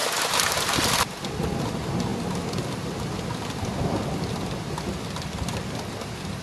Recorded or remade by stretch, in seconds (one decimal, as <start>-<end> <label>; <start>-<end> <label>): 0.0-1.3 remade; 1.3-6.4 recorded